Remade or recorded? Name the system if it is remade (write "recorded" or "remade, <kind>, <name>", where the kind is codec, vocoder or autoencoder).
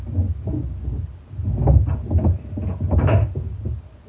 recorded